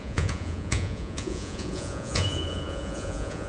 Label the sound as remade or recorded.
remade